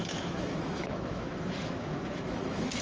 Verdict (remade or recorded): remade